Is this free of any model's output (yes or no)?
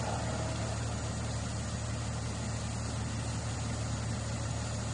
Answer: yes